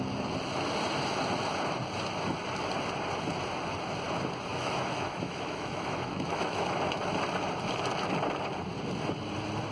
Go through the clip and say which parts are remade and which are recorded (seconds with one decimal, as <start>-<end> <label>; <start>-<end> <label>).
0.0-4.5 recorded; 4.5-6.8 remade; 6.8-9.7 recorded